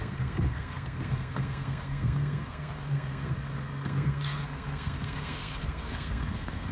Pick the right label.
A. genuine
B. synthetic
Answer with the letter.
B